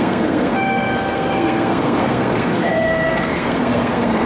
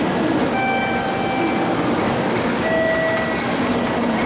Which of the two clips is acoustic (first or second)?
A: second